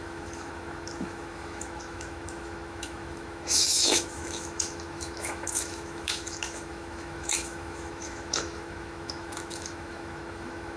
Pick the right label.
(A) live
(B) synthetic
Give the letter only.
B